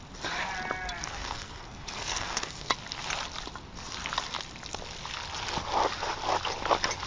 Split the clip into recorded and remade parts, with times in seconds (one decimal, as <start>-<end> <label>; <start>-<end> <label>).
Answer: 0.0-1.1 recorded; 1.1-2.7 remade; 2.7-7.1 recorded